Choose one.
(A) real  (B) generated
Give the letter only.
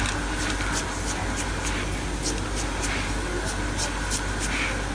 A